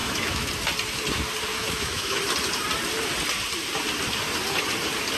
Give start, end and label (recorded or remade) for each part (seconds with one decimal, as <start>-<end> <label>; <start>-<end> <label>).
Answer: 0.0-0.5 remade; 0.5-1.5 recorded; 1.5-2.2 remade; 2.2-5.2 recorded